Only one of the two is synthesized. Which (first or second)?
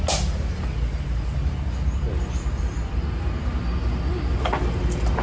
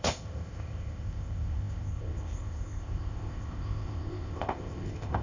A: second